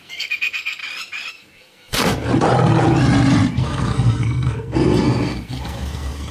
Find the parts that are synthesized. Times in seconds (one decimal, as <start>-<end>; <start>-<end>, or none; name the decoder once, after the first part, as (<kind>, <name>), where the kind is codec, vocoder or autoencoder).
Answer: 0.0-0.8 (codec, SNAC); 1.3-2.3; 3.6-6.3